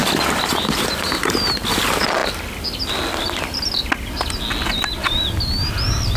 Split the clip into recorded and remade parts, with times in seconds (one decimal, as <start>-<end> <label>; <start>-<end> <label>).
0.0-6.2 recorded